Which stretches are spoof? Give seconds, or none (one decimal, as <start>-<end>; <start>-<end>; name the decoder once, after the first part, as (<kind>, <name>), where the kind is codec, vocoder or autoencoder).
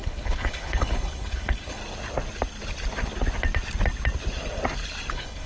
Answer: 0.0-1.8 (codec, HILCodec); 5.1-5.5